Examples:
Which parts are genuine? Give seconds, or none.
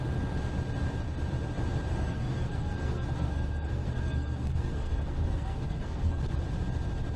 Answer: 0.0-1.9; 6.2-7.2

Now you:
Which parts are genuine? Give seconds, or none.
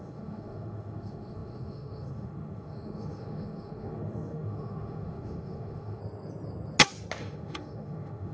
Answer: 6.0-7.2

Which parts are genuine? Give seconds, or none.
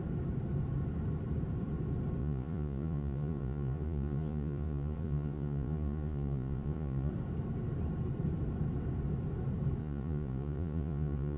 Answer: 0.0-2.2; 7.1-9.8